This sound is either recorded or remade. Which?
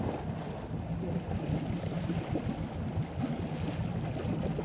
recorded